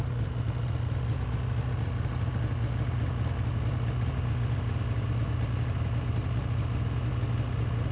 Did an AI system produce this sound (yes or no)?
no